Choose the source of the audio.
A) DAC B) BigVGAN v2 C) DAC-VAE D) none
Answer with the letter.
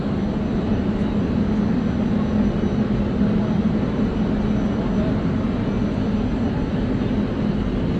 D